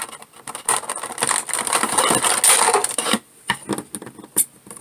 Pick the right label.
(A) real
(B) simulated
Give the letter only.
A